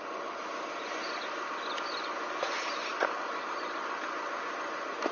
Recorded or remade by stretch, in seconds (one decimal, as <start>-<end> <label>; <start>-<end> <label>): 0.0-5.1 recorded